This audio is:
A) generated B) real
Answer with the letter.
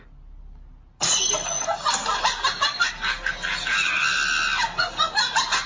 B